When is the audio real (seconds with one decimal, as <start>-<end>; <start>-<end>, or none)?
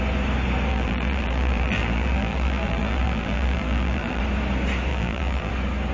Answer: 0.0-0.7; 4.2-4.9; 5.5-5.9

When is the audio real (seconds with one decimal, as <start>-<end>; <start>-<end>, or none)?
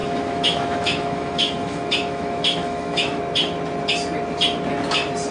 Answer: 3.2-5.3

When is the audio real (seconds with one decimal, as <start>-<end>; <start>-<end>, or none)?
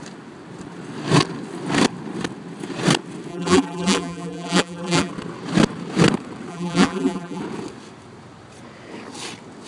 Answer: 0.0-3.3; 5.1-6.5; 7.4-9.7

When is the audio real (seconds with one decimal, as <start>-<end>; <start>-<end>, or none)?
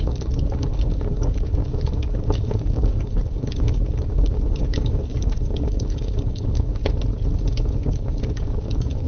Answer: 6.8-7.5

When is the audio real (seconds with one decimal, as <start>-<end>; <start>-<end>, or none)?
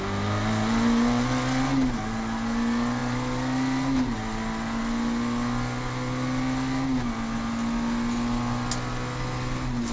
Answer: 0.0-9.9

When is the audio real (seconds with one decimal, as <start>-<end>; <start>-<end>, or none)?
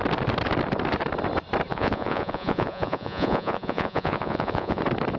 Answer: 0.0-1.7; 4.8-5.2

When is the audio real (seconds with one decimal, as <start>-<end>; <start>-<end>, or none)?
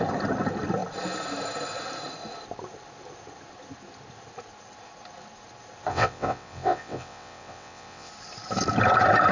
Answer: 0.0-5.9; 8.1-9.3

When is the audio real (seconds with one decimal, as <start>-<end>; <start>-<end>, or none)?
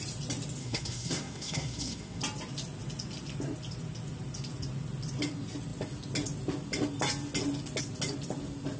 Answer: 0.0-0.6; 2.2-8.8